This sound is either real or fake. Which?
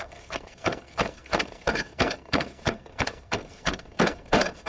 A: fake